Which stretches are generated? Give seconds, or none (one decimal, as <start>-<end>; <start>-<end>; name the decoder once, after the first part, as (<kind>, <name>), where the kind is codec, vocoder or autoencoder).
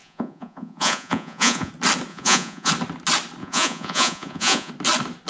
0.0-1.7 (vocoder, Vocos); 2.1-2.7; 3.4-4.7